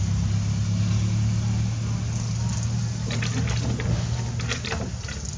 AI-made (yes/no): no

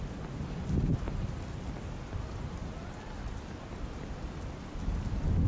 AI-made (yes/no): no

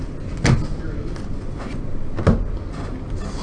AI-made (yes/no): no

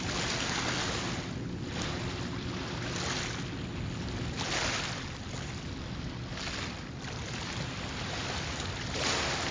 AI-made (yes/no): no